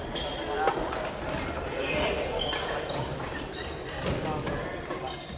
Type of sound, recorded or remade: recorded